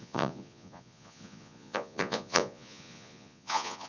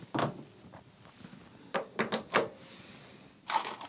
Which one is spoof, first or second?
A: first